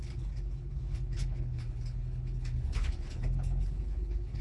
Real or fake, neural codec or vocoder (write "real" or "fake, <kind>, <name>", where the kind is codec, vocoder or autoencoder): fake, codec, HILCodec